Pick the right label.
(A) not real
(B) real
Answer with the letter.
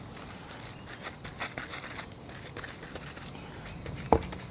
B